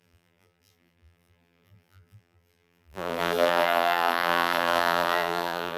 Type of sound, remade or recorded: remade